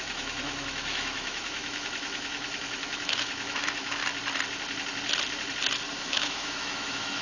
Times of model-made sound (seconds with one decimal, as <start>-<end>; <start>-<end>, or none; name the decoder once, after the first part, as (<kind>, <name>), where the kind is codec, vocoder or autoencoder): 0.0-4.0 (autoencoder, DAC-VAE); 6.0-7.2